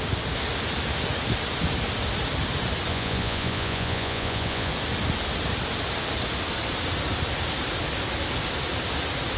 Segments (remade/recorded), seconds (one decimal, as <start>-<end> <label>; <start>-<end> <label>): 0.0-2.9 recorded; 2.9-4.7 remade; 4.7-9.4 recorded

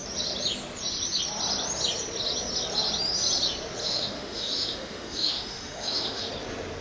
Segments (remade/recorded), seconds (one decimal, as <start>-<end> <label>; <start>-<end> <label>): 0.0-3.8 recorded; 3.8-6.3 remade; 6.3-6.8 recorded

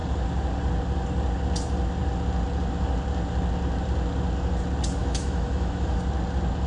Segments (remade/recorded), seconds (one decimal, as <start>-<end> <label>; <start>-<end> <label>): 0.0-5.0 recorded; 5.0-6.0 remade; 6.0-6.7 recorded

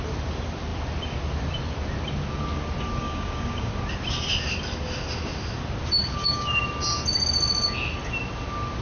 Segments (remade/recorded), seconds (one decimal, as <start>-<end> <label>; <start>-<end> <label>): 0.0-3.0 recorded; 3.0-3.7 remade; 3.7-6.0 recorded; 6.0-6.6 remade; 6.6-8.8 recorded

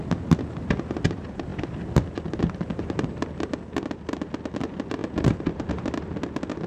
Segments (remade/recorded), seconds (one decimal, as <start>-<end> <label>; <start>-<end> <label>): 0.0-6.7 recorded

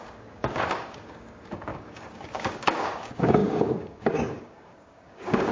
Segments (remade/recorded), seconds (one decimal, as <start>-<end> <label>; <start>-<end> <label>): 0.0-5.5 remade

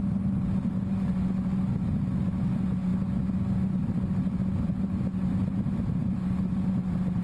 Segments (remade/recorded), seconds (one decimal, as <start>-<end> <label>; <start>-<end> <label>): 0.0-7.2 recorded

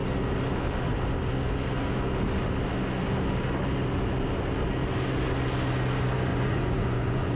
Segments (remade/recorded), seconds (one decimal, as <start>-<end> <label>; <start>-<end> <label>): 0.0-6.3 recorded; 6.3-7.4 remade